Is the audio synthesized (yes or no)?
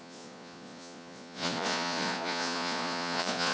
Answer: yes